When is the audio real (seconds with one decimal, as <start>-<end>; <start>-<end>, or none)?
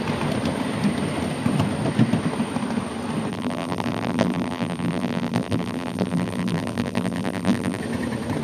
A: 0.0-3.3; 7.8-8.4